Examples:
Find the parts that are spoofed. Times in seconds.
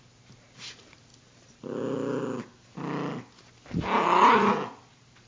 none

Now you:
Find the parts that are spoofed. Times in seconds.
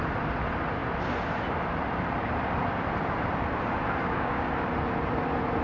4.0-4.5 (codec, DAC)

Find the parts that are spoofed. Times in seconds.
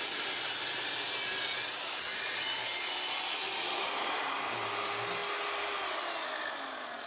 none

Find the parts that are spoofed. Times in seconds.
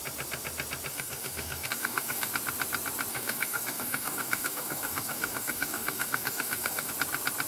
0.9-2.3 (codec, DAC); 3.1-6.9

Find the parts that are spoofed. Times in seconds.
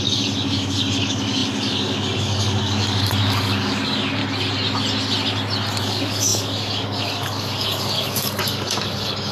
0.0-4.2 (codec, DAC); 5.8-9.3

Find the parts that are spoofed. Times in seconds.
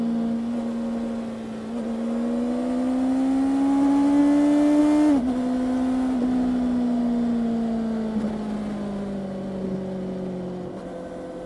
none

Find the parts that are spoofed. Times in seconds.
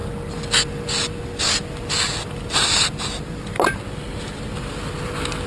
none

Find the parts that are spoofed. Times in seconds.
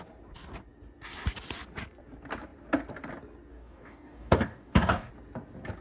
3.5-5.1 (codec, DAC)